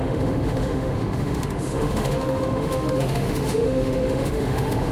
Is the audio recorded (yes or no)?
no